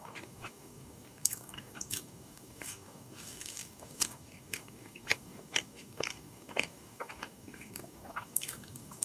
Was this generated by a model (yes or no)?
yes